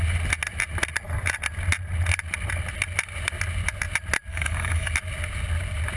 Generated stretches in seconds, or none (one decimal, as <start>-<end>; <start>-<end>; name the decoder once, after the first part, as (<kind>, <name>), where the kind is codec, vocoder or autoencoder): 4.3-4.9 (codec, DAC)